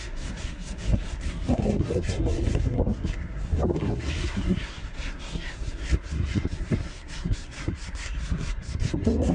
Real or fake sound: fake